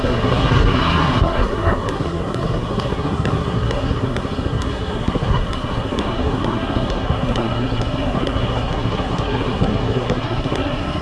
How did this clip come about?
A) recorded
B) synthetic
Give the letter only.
B